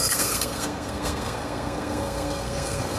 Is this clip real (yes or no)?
no